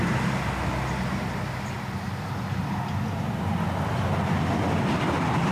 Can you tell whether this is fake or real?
real